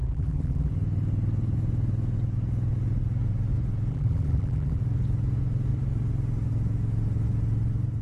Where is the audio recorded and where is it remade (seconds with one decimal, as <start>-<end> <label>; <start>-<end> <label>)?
0.0-0.7 remade; 0.7-3.9 recorded; 3.9-4.8 remade; 4.8-8.0 recorded